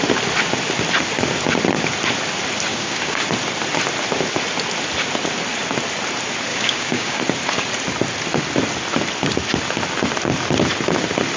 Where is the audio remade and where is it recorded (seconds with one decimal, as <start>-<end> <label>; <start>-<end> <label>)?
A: 0.0-2.7 recorded; 2.7-3.2 remade; 3.2-6.5 recorded; 6.5-7.2 remade; 7.2-11.4 recorded

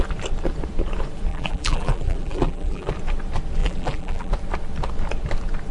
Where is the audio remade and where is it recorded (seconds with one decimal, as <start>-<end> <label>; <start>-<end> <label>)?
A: 0.0-1.3 recorded; 1.3-2.9 remade; 2.9-3.6 recorded; 3.6-4.3 remade; 4.3-5.7 recorded

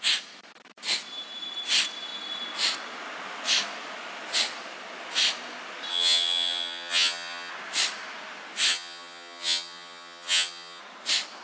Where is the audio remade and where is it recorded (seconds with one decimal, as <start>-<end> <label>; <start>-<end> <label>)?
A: 0.0-5.9 recorded; 5.9-7.5 remade; 7.5-8.7 recorded; 8.7-10.8 remade; 10.8-11.4 recorded

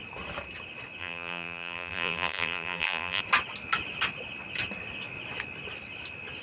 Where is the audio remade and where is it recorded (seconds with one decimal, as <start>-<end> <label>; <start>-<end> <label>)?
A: 0.0-1.0 recorded; 1.0-3.2 remade; 3.2-6.4 recorded

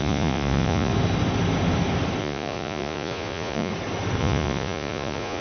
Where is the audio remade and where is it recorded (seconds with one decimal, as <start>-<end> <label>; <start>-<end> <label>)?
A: 0.0-0.9 remade; 0.9-2.2 recorded; 2.2-3.7 remade; 3.7-4.2 recorded; 4.2-5.4 remade

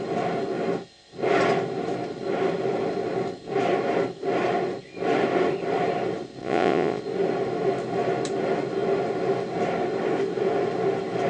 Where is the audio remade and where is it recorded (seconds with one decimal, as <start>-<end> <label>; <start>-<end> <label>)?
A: 0.0-6.4 recorded; 6.4-7.0 remade; 7.0-11.3 recorded

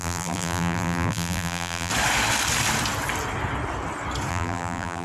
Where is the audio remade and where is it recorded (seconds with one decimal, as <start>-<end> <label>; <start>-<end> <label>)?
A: 0.0-1.9 remade; 1.9-4.3 recorded; 4.3-5.0 remade

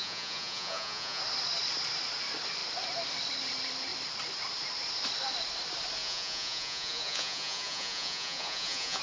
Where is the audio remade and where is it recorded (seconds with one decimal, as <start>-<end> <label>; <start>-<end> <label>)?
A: 0.0-1.2 remade; 1.2-6.0 recorded; 6.0-9.0 remade